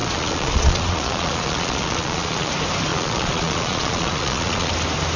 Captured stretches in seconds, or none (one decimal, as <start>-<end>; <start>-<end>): 2.5-2.9; 4.7-5.2